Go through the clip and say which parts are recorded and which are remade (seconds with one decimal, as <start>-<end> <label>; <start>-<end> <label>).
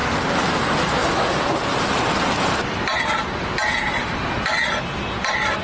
0.0-5.6 recorded